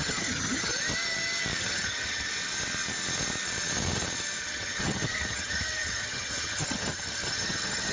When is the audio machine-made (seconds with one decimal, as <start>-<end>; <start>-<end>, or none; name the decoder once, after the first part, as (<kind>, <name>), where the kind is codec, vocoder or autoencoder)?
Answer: 0.0-0.7 (vocoder, HiFi-GAN); 1.6-2.3; 4.4-7.9